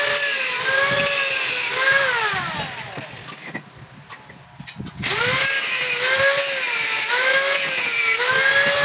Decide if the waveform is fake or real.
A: real